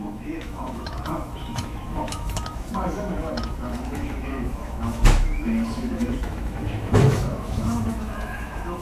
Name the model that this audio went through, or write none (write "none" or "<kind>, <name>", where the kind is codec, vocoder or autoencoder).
autoencoder, DAC-VAE